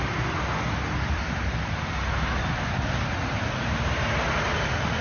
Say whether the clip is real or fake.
real